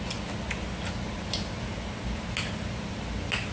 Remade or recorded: recorded